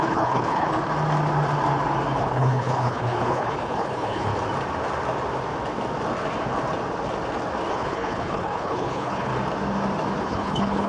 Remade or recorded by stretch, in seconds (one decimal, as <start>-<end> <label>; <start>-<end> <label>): 0.0-0.7 remade; 0.7-2.2 recorded; 2.2-4.3 remade; 4.3-7.7 recorded; 7.7-9.3 remade; 9.3-10.2 recorded; 10.2-10.9 remade